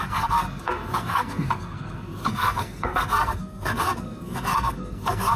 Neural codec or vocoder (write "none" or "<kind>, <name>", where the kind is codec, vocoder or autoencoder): codec, SNAC